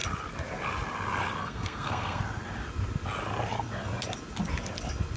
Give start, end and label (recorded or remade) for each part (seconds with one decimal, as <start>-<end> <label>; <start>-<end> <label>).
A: 0.0-1.4 recorded; 1.4-2.2 remade; 2.2-5.2 recorded